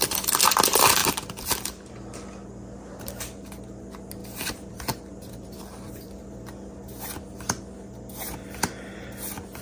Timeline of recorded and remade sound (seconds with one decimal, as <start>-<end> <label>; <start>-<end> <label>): 0.0-1.0 recorded; 1.0-1.9 remade; 1.9-4.2 recorded; 4.2-6.5 remade; 6.5-9.6 recorded